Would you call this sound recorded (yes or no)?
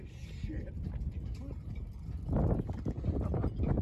yes